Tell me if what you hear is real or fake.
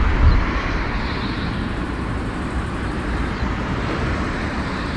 fake